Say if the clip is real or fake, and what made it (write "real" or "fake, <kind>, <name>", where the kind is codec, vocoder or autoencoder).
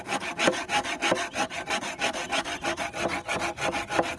real